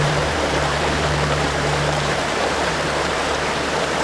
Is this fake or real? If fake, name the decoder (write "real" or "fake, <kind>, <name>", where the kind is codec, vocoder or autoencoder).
fake, vocoder, BigVGAN v2